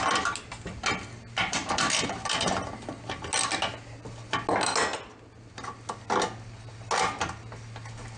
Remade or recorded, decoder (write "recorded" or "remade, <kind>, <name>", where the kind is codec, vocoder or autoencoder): recorded